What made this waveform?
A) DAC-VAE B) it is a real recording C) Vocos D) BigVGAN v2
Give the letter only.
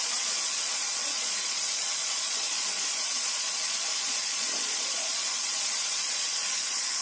C